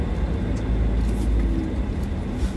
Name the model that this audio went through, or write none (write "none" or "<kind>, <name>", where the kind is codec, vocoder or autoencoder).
none